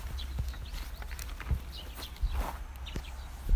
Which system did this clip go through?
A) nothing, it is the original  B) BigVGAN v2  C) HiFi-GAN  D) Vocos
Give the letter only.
A